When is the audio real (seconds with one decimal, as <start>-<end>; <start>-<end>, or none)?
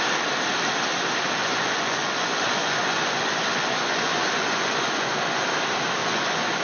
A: 0.0-1.4; 5.4-6.0